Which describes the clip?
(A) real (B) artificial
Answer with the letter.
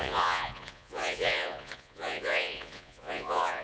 B